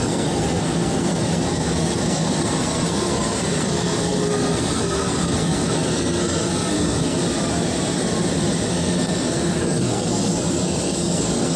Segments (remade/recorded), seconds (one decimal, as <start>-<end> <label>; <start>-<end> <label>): 0.0-7.2 remade; 7.2-8.7 recorded; 8.7-11.6 remade